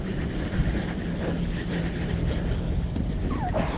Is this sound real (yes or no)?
yes